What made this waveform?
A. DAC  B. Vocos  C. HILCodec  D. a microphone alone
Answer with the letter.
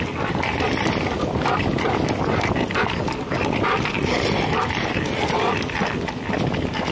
D